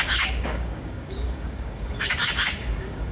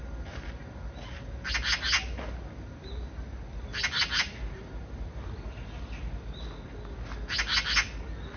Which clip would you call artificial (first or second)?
first